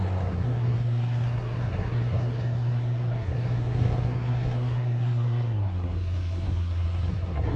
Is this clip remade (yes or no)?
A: yes